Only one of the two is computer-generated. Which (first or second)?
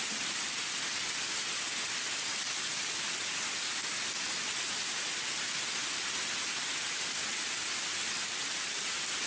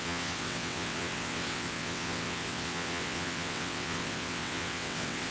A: second